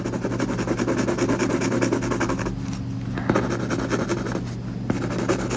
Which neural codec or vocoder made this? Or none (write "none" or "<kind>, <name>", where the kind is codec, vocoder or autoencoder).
none